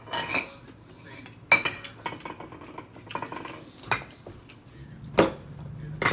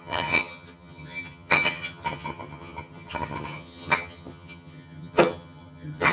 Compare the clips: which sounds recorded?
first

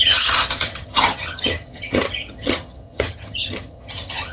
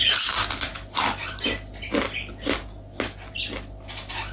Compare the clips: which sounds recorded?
second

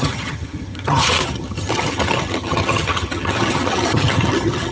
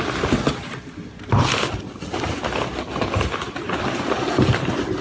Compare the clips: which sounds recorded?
second